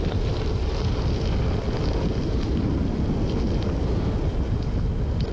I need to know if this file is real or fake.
real